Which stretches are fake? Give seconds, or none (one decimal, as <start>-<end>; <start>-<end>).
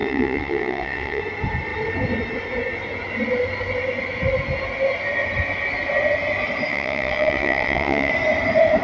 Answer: 0.0-1.2; 6.7-8.1